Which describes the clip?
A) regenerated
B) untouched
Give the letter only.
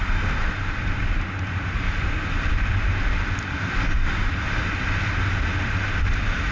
B